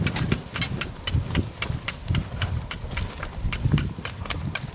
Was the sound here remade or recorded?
recorded